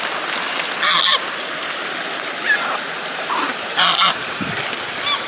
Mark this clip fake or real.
real